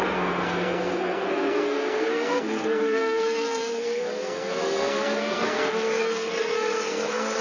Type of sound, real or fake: fake